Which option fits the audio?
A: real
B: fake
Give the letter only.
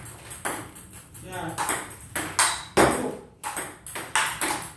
A